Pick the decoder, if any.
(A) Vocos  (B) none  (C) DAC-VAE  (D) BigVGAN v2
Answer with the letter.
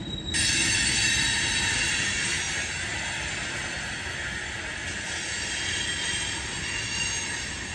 B